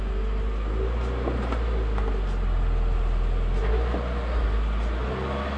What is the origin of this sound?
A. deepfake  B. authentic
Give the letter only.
B